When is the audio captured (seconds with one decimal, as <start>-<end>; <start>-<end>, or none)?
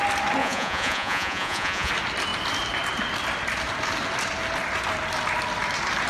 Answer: 0.0-0.4; 1.9-6.1